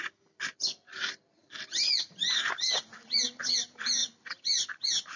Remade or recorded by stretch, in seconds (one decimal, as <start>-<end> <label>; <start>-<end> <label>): 0.0-4.0 recorded; 4.0-4.7 remade; 4.7-5.2 recorded